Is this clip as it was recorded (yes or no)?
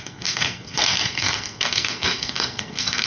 no